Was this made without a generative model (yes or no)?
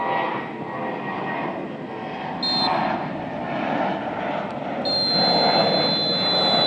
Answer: yes